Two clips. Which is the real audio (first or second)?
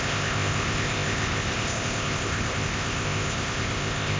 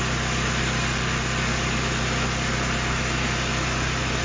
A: second